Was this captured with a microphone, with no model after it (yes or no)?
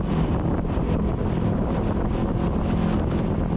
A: yes